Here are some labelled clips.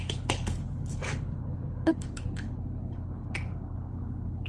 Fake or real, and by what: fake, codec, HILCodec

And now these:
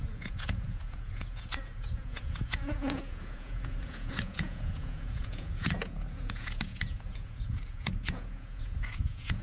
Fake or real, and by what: fake, vocoder, Vocos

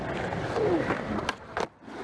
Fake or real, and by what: real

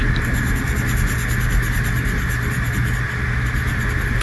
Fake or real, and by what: real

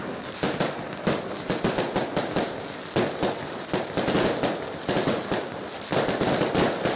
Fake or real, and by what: real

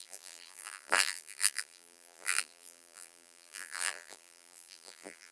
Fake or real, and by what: fake, vocoder, BigVGAN v2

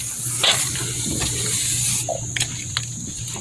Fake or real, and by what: real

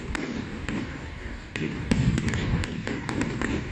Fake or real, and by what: fake, codec, DAC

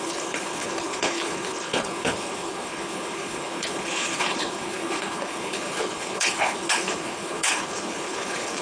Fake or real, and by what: fake, codec, HILCodec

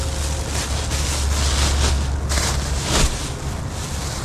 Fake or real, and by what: real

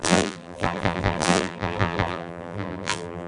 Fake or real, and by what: fake, vocoder, BigVGAN v2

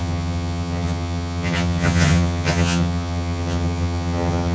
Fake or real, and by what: fake, vocoder, HiFi-GAN